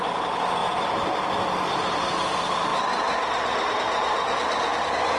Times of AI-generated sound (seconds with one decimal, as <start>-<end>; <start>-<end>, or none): none